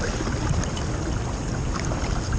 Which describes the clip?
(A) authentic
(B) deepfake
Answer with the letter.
A